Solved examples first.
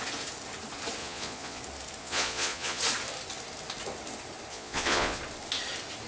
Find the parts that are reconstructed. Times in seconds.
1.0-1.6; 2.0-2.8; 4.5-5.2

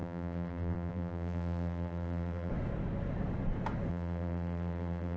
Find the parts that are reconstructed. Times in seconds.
0.0-2.5; 3.9-5.2

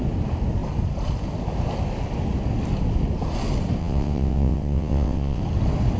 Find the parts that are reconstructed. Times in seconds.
3.8-5.4